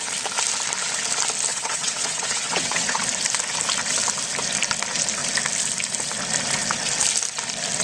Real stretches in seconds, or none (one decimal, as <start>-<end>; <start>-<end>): 0.0-1.5; 3.0-7.8